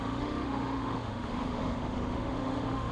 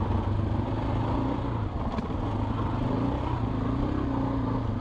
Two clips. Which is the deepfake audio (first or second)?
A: first